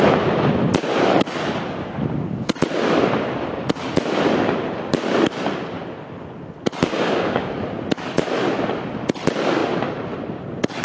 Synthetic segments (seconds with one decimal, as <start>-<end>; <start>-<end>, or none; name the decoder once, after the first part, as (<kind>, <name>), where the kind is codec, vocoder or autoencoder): 6.9-7.5 (codec, DAC)